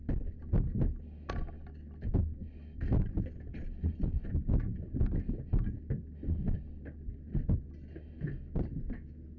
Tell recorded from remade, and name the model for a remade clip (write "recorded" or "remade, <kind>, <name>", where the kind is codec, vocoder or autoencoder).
recorded